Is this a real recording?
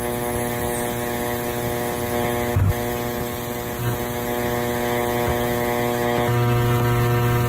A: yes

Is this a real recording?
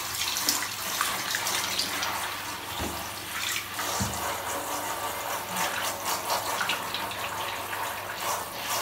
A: yes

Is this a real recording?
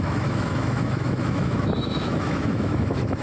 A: no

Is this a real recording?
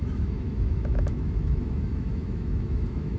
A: no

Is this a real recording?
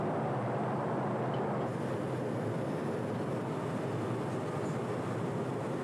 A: yes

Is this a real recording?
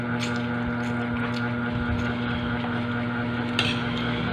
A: yes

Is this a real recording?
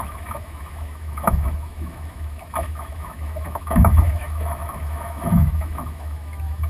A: no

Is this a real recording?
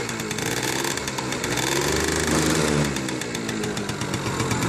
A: yes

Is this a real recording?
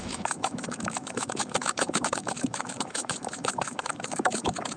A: no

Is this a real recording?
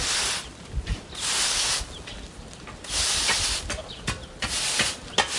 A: yes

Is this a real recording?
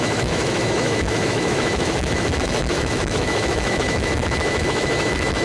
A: no